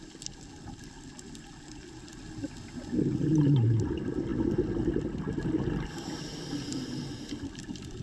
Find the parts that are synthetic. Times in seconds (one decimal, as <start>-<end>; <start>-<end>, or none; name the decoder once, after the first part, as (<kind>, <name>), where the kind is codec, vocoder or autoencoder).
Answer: none